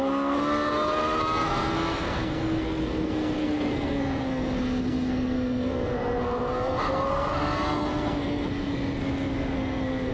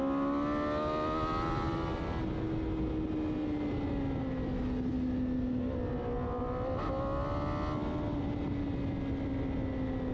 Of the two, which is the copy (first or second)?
first